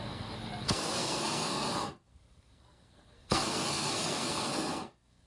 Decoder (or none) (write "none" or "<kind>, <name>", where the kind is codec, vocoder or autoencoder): codec, SNAC